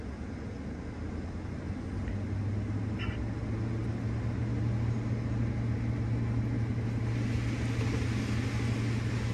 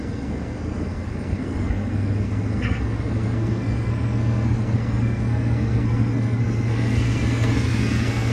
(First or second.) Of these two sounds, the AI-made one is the second